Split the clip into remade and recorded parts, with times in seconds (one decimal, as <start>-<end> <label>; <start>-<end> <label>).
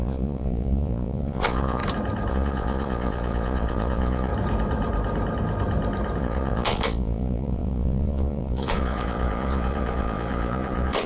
0.0-1.8 remade; 1.8-2.3 recorded; 2.3-4.3 remade; 4.3-6.2 recorded; 6.2-11.1 remade